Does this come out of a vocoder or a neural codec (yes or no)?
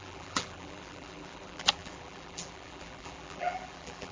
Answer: yes